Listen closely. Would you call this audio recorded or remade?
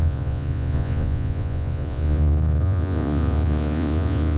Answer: remade